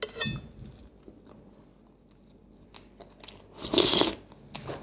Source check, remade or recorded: recorded